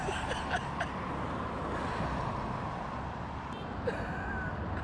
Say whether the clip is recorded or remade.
recorded